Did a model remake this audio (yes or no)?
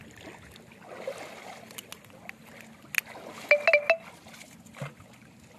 no